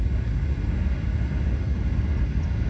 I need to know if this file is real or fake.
real